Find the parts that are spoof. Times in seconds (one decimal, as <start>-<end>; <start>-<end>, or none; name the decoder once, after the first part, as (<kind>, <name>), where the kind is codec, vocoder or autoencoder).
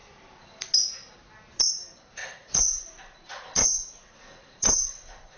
2.2-5.4 (vocoder, Vocos)